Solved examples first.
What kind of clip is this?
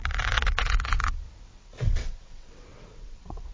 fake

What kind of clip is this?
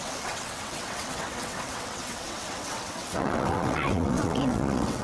fake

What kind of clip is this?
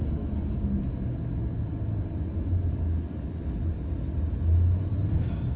real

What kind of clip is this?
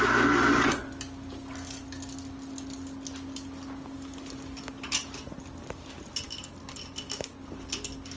real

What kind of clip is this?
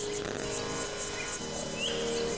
real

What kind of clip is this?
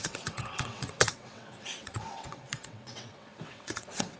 fake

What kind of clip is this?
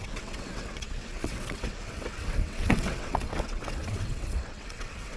fake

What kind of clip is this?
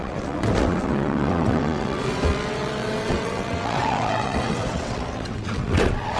fake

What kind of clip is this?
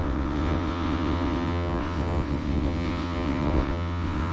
fake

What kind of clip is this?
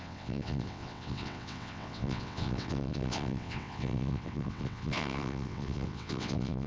fake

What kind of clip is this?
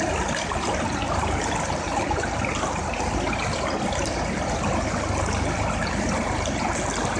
real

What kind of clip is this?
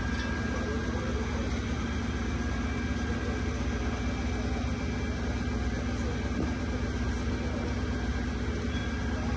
real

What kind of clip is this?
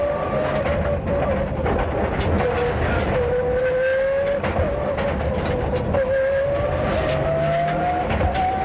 real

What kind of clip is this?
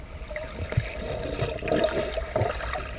real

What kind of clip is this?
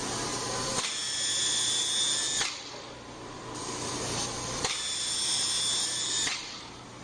real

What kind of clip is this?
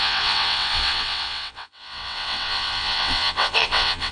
fake